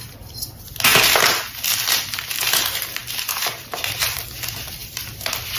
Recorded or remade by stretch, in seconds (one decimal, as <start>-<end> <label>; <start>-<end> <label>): 0.0-3.0 recorded; 3.0-4.2 remade; 4.2-4.8 recorded; 4.8-5.6 remade